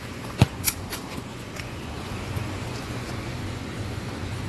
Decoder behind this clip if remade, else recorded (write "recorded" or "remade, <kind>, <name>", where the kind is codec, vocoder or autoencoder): remade, vocoder, Vocos